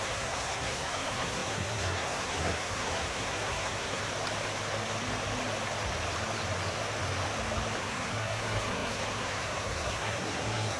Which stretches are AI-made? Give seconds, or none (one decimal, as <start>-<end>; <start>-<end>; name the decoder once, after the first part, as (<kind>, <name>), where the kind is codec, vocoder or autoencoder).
0.0-4.0 (codec, SNAC); 7.8-10.8